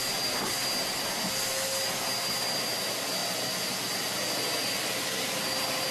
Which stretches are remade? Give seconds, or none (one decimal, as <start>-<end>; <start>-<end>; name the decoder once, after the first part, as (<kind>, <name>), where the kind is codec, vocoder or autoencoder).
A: none